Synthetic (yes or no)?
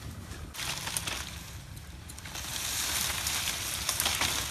no